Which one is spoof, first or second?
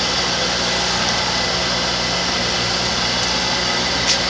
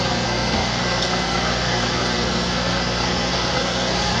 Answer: second